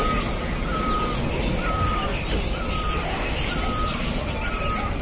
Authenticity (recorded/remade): recorded